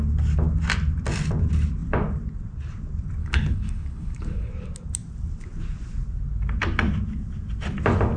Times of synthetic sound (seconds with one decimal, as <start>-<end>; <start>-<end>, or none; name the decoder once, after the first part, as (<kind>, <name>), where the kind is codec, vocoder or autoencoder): 3.2-4.5 (codec, HILCodec)